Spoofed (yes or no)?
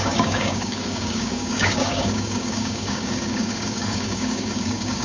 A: yes